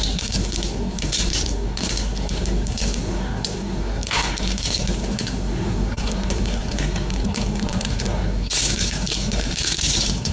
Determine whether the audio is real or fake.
fake